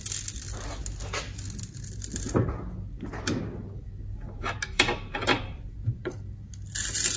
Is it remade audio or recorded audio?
recorded